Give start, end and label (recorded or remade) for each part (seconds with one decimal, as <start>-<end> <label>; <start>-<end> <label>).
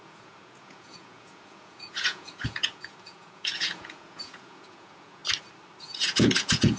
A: 0.0-5.2 remade; 5.2-5.8 recorded; 5.8-6.8 remade